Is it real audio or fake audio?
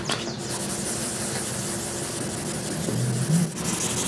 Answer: real